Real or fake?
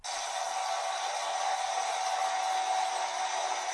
real